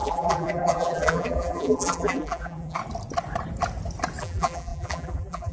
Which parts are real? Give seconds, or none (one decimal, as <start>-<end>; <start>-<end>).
2.8-4.2